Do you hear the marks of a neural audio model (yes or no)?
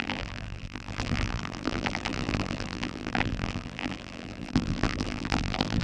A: yes